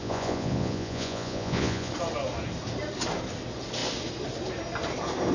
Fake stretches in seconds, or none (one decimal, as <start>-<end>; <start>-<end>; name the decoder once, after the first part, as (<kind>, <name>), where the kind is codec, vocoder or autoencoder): 0.0-1.9 (vocoder, Vocos)